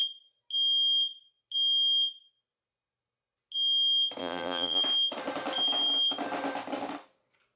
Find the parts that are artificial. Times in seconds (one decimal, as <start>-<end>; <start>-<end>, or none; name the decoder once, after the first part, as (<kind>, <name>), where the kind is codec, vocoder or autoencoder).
4.2-4.8 (vocoder, BigVGAN v2)

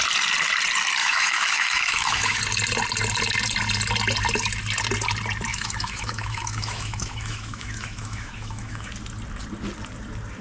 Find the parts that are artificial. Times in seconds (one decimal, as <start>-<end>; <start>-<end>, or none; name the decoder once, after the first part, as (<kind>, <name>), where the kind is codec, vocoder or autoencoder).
1.0-2.4 (autoencoder, DAC-VAE); 5.5-8.9